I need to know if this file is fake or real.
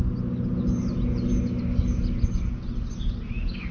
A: real